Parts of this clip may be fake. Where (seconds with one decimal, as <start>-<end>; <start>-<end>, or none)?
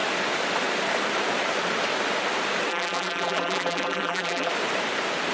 2.7-4.5